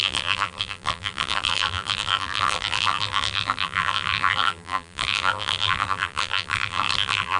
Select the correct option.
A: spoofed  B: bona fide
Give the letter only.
A